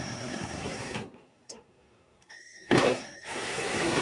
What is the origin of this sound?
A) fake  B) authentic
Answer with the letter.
A